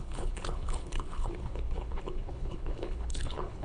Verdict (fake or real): fake